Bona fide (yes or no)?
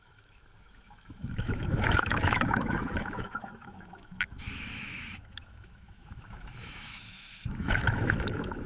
no